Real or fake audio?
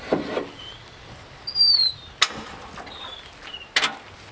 real